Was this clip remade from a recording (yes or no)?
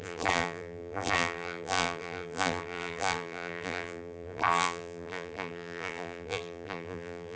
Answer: yes